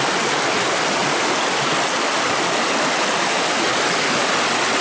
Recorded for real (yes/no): yes